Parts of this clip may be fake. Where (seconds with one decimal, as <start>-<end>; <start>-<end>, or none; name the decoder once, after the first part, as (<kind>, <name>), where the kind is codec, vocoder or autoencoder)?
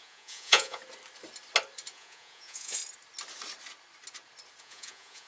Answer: 0.0-0.8 (vocoder, Vocos); 1.9-2.8; 4.6-5.3